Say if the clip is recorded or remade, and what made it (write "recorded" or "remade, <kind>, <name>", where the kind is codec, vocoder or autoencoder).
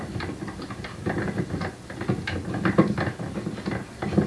recorded